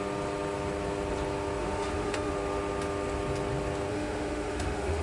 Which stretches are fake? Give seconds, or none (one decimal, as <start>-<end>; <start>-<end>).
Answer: 1.6-2.3; 3.9-5.0